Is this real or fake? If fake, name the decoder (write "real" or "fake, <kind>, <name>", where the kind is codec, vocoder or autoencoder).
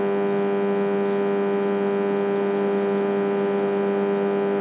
real